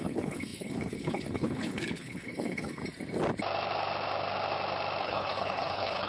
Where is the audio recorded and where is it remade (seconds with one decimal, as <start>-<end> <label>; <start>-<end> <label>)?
0.0-2.8 remade; 2.8-5.0 recorded; 5.0-6.1 remade